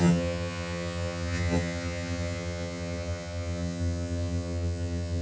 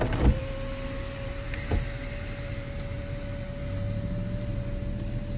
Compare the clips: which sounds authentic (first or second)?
second